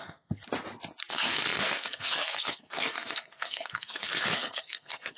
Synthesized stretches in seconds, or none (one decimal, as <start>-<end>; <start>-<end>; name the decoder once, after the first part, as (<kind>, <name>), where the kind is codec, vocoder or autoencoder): 0.0-0.4 (codec, SNAC); 1.1-5.2